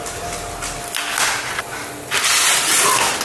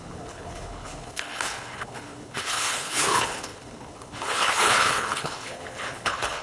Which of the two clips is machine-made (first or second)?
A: second